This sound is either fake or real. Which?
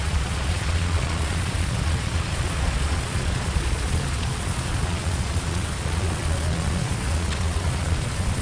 fake